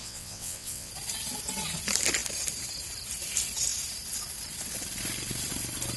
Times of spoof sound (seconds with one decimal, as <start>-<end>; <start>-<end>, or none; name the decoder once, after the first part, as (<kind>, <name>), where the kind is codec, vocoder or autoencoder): 0.0-0.9 (vocoder, WaveNeXt)